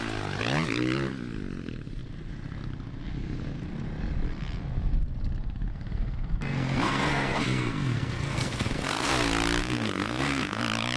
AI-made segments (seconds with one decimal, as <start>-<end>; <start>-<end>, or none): 5.7-9.1; 9.6-10.6